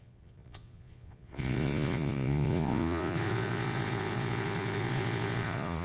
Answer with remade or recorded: remade